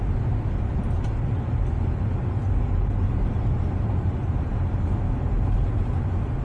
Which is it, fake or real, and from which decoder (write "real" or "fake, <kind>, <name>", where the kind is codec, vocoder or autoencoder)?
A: real